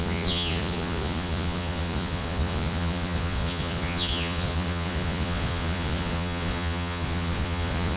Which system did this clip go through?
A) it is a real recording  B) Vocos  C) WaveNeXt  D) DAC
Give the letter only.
B